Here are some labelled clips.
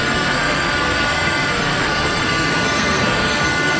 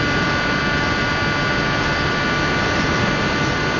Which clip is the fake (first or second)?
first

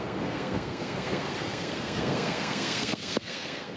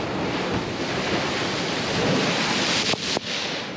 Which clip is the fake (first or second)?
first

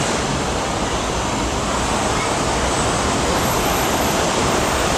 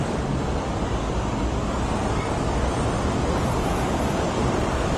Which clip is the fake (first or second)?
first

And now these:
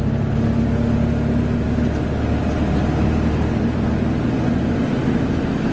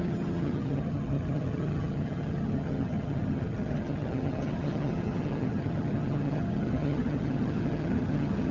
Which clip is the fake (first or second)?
second